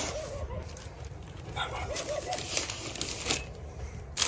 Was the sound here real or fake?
real